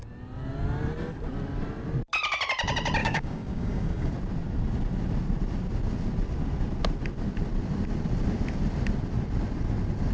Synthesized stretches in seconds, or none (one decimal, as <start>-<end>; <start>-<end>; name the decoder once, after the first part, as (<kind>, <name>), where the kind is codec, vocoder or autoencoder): 3.0-4.1 (codec, DAC)